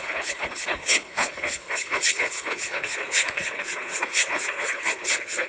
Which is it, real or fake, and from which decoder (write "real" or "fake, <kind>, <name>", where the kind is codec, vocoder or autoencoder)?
fake, codec, HILCodec